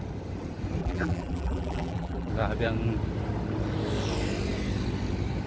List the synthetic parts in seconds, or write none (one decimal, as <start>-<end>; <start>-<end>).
0.8-2.3